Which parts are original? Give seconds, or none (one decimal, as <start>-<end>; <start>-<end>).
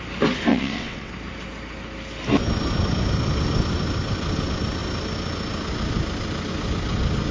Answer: 0.0-0.5; 1.1-7.3